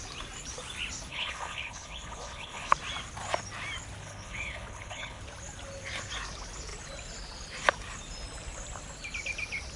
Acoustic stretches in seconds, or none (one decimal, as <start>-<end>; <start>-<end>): 0.0-1.1; 2.7-4.0; 5.2-9.8